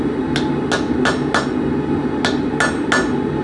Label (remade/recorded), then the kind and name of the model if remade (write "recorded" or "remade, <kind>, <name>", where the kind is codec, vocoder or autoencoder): recorded